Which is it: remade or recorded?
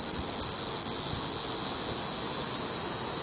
recorded